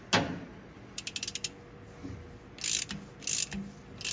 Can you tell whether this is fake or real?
real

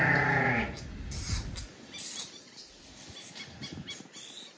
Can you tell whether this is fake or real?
real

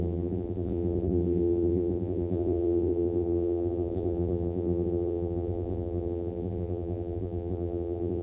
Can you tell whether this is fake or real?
fake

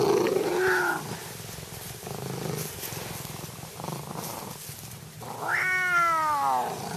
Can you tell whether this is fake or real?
real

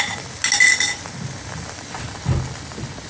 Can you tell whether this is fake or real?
real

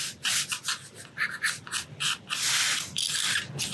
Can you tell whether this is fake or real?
real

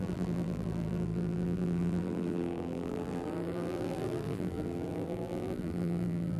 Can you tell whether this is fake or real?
fake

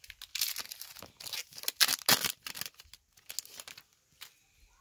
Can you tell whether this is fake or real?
real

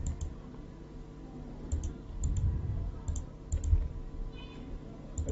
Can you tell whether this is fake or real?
real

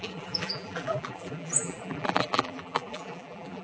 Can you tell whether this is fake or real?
fake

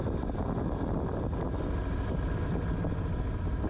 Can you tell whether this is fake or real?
fake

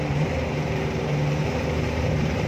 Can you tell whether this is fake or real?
fake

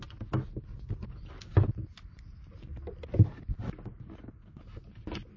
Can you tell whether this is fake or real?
real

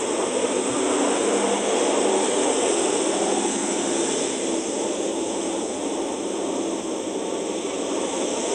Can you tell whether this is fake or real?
fake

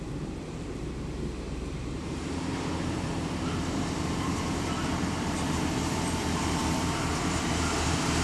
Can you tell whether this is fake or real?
fake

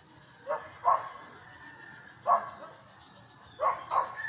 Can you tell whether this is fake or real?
real